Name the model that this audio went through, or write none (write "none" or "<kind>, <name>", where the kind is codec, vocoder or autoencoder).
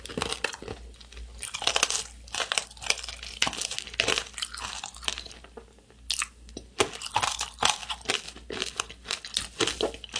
none